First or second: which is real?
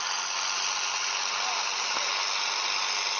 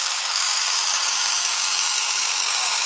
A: first